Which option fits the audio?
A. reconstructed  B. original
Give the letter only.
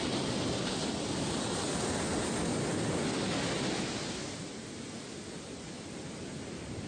B